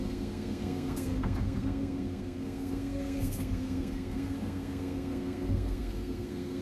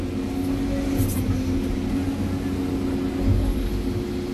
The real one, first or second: second